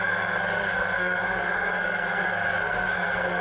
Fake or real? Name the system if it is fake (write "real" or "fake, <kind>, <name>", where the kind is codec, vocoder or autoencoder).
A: fake, codec, SNAC